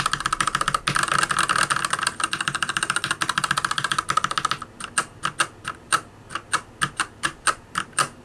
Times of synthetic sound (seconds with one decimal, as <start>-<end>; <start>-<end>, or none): none